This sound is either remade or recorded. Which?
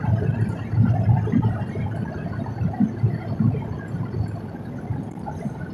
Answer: remade